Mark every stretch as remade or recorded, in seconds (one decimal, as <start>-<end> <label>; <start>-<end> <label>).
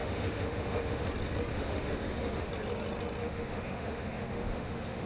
0.0-1.1 remade; 1.1-1.5 recorded; 1.5-2.5 remade; 2.5-3.2 recorded; 3.2-5.1 remade